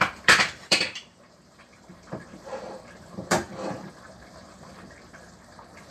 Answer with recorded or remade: remade